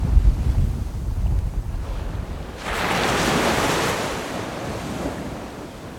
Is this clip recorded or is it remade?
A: recorded